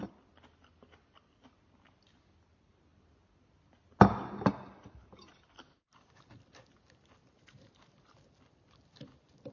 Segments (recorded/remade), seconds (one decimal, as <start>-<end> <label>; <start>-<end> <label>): 0.0-9.5 recorded